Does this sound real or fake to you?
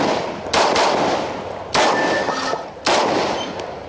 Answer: real